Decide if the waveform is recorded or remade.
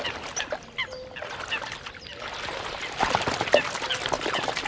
recorded